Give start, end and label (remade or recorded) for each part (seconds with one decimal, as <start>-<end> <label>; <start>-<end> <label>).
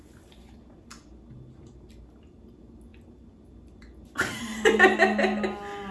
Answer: 0.0-5.9 recorded